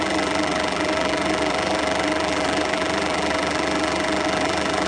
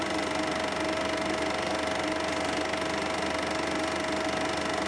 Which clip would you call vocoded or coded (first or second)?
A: first